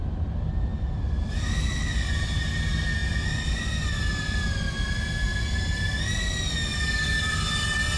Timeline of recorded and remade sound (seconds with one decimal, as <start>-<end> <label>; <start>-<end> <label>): 0.0-8.0 recorded